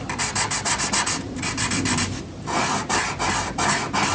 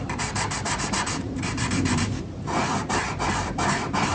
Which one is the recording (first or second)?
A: first